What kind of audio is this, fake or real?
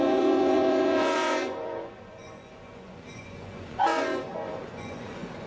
fake